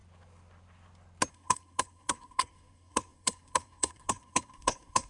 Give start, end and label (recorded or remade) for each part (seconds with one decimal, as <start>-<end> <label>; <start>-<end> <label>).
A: 0.0-1.3 recorded; 1.3-5.1 remade